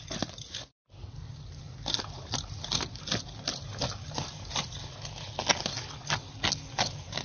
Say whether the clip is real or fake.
real